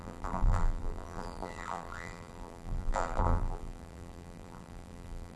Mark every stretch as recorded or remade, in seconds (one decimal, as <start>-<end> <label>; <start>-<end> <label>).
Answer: 0.0-5.4 remade